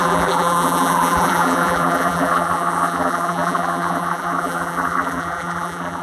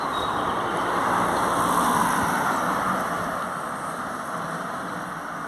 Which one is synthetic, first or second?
first